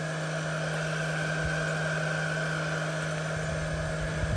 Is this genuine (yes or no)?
yes